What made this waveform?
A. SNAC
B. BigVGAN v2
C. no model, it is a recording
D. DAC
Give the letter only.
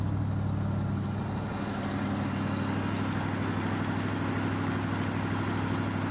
C